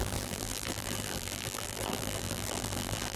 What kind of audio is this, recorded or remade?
remade